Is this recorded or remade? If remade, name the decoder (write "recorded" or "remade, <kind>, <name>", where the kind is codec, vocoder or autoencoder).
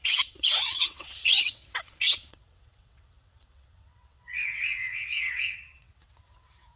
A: remade, vocoder, WaveNeXt